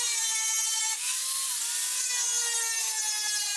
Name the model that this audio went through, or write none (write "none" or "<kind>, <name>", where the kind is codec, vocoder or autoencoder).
none